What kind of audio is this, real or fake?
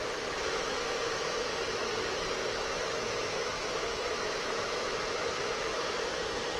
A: fake